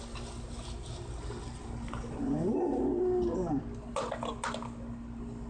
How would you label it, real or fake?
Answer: real